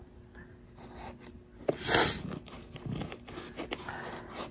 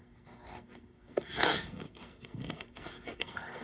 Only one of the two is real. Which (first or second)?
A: first